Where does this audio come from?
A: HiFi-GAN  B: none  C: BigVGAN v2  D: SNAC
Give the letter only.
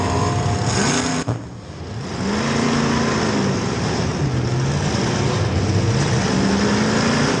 B